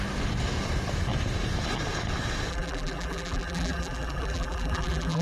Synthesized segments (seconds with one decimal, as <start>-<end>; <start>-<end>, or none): 2.5-5.2